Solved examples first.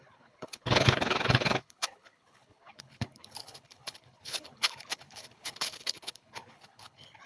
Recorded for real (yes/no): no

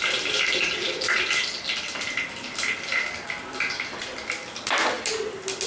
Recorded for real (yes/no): yes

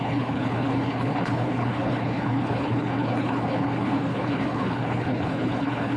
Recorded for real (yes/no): no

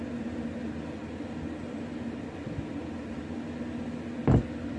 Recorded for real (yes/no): yes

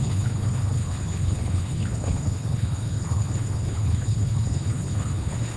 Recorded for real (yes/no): no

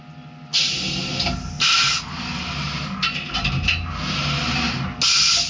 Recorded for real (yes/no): yes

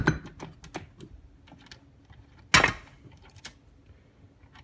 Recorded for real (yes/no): yes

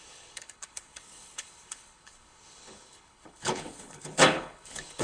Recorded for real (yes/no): no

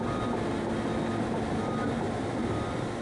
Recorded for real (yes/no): yes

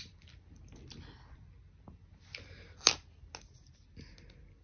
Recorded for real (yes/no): yes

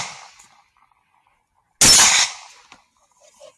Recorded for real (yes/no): yes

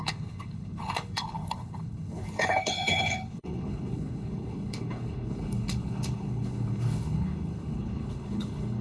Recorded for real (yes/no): no